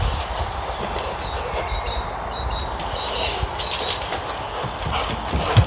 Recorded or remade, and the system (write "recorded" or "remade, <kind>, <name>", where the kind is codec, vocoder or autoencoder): recorded